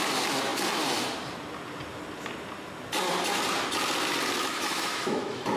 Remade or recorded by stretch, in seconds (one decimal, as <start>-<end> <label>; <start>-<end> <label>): 0.0-4.4 recorded; 4.4-5.6 remade